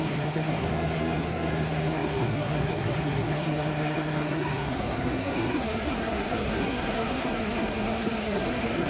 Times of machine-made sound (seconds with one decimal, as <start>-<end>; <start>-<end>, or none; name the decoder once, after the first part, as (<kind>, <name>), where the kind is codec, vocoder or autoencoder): 0.0-8.9 (codec, SNAC)